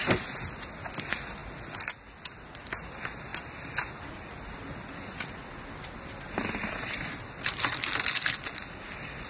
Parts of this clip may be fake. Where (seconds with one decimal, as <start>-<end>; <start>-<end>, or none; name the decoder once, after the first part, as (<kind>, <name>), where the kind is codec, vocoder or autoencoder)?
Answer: none